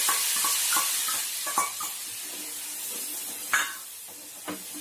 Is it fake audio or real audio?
real